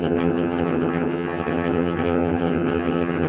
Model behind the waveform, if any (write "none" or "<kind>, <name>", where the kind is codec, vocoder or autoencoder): vocoder, HiFi-GAN